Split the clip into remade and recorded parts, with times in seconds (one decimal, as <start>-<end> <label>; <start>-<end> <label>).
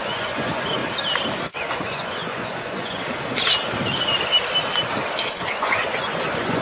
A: 0.0-0.8 remade; 0.8-1.4 recorded; 1.4-3.0 remade; 3.0-5.3 recorded; 5.3-6.6 remade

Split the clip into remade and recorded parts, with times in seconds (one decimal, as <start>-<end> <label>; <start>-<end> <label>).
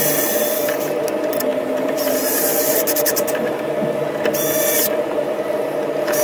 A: 0.0-1.5 recorded; 1.5-4.1 remade; 4.1-6.2 recorded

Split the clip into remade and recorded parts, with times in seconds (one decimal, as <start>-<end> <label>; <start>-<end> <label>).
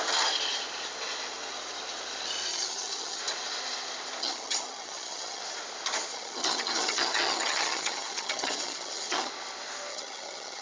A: 0.0-2.5 recorded; 2.5-3.2 remade; 3.2-4.2 recorded; 4.2-5.4 remade; 5.4-6.1 recorded; 6.1-9.3 remade; 9.3-9.9 recorded; 9.9-10.6 remade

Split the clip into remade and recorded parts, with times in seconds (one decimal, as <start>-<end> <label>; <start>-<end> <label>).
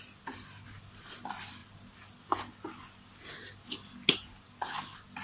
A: 0.0-5.2 recorded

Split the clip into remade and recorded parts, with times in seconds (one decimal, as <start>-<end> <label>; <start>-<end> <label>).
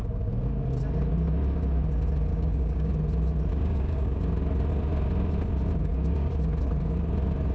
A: 0.0-2.3 recorded; 2.3-2.9 remade; 2.9-3.5 recorded; 3.5-4.2 remade; 4.2-5.8 recorded; 5.8-6.3 remade; 6.3-7.5 recorded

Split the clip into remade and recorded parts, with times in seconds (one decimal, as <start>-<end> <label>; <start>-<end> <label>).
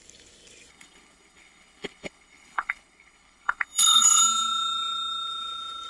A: 0.0-0.7 recorded; 0.7-4.2 remade; 4.2-5.9 recorded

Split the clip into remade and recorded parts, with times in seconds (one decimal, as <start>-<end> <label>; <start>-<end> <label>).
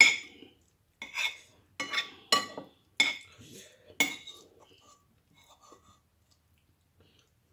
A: 0.0-7.5 recorded